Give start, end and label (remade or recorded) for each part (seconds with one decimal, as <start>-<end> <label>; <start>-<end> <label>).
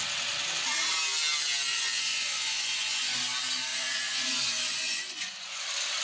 0.0-1.7 recorded; 1.7-3.2 remade; 3.2-3.7 recorded; 3.7-5.6 remade; 5.6-6.0 recorded